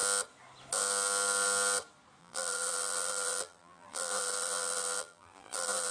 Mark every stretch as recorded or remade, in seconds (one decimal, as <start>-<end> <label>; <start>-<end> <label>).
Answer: 0.0-2.2 recorded; 2.2-5.9 remade